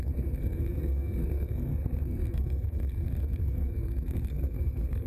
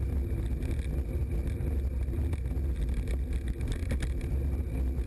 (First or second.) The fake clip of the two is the first